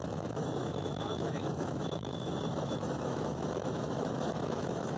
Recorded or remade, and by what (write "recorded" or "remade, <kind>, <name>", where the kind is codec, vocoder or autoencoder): remade, autoencoder, DAC-VAE